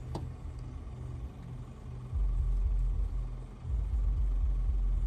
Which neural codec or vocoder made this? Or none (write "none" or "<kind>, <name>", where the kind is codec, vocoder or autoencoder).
none